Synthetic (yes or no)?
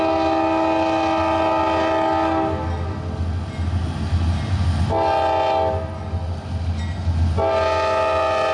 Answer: no